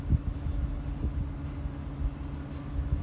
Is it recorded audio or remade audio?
recorded